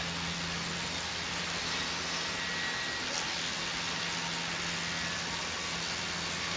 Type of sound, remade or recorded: recorded